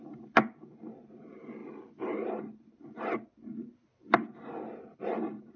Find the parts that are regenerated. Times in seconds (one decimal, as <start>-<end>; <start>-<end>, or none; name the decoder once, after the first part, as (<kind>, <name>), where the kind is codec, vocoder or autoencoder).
none